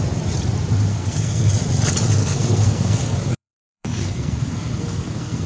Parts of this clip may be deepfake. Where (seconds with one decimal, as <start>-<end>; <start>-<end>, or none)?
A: 0.9-1.5; 2.2-5.5